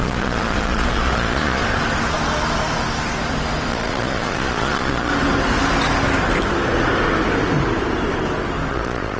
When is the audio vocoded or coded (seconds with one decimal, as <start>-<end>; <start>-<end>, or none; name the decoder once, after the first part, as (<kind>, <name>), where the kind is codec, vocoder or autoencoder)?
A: 0.0-1.6 (vocoder, Vocos); 3.7-5.1; 8.7-9.2

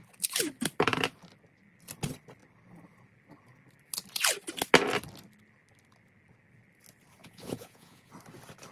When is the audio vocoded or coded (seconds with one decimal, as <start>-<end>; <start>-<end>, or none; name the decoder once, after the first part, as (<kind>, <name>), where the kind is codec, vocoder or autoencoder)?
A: 7.2-8.1 (vocoder, Vocos)

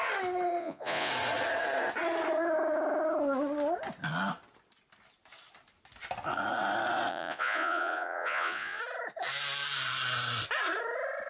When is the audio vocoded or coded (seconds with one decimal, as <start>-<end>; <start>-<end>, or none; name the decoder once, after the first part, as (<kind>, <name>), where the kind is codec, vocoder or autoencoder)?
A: 0.6-1.1 (vocoder, Vocos); 7.1-8.8

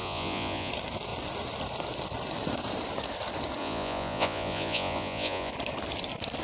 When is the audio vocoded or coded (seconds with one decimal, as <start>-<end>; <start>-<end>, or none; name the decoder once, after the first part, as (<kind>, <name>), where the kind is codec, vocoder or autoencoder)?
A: 0.0-0.7 (vocoder, Vocos); 3.6-5.5

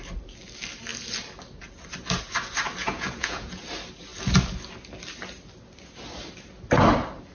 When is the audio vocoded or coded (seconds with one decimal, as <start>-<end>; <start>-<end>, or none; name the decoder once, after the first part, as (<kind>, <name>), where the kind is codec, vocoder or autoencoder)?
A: 2.8-3.6 (vocoder, Vocos)

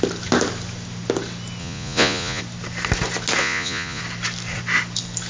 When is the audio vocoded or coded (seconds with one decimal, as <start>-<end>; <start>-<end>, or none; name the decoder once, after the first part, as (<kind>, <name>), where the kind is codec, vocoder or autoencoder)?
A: 1.6-2.4 (vocoder, Vocos); 3.4-4.0